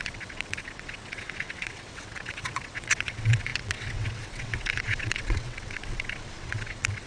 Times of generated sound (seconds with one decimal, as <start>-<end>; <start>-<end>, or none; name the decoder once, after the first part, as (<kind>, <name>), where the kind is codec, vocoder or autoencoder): 0.0-7.1 (vocoder, WaveNeXt)